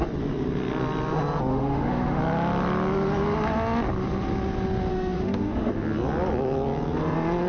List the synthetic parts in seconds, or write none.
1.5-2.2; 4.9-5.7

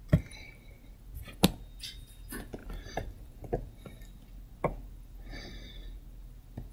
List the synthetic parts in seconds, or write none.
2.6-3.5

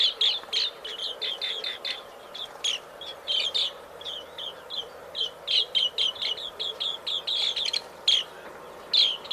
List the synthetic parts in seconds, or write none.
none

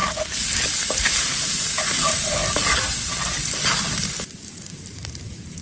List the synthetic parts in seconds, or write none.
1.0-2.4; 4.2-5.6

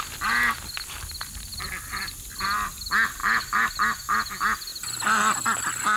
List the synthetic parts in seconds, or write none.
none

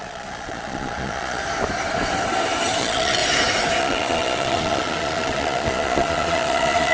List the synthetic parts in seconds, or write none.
0.0-1.4; 2.8-3.2; 3.8-6.9

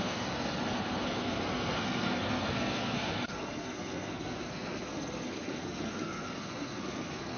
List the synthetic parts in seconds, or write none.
0.0-7.4